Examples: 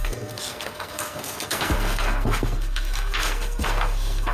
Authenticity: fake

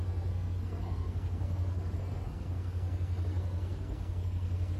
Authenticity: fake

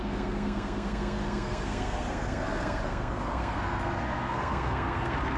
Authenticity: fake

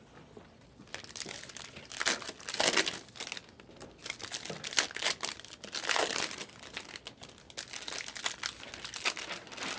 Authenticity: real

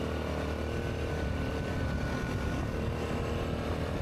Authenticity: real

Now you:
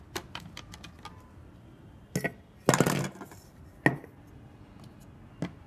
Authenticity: real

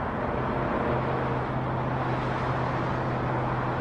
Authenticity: real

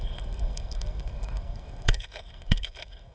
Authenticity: fake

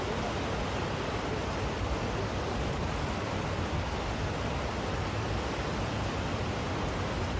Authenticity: real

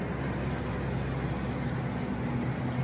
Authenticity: real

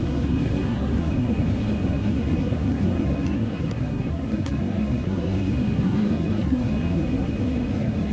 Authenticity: fake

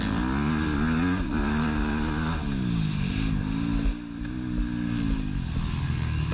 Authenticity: real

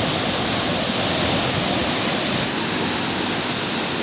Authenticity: real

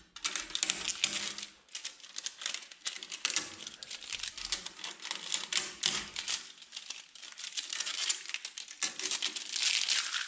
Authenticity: real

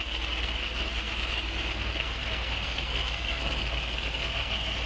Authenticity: fake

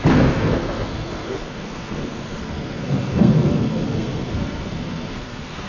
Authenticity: fake